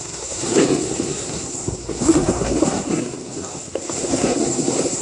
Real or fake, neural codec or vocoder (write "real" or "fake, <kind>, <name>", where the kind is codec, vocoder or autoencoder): fake, codec, SNAC